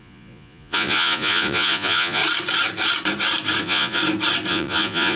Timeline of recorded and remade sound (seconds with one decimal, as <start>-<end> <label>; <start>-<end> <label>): 0.0-2.2 remade; 2.2-3.6 recorded; 3.6-4.0 remade; 4.0-4.5 recorded; 4.5-5.2 remade